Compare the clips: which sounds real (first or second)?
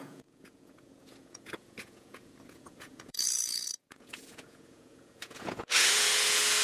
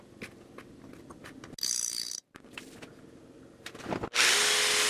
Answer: second